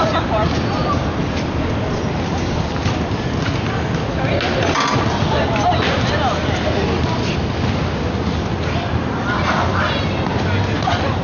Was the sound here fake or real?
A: real